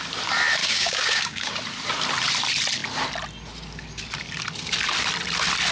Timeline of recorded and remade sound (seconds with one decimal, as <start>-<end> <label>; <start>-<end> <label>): 0.0-0.6 recorded; 0.6-1.6 remade; 1.6-5.7 recorded